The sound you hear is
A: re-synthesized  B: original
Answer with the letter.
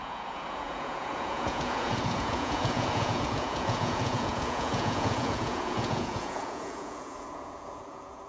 A